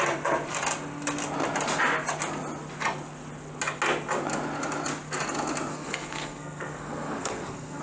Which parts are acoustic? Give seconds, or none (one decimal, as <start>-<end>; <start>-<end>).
0.0-5.7